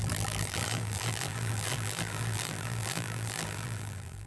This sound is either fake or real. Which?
fake